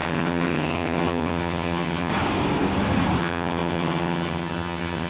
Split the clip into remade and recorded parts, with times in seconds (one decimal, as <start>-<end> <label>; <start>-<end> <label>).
0.0-2.1 remade; 2.1-3.2 recorded; 3.2-5.1 remade